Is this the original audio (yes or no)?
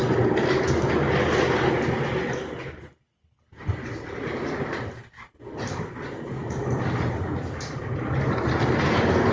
yes